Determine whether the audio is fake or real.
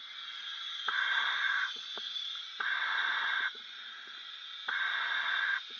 real